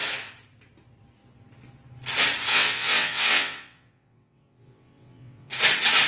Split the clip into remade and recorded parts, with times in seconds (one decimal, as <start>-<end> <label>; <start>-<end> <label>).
0.0-2.5 recorded; 2.5-5.5 remade; 5.5-6.1 recorded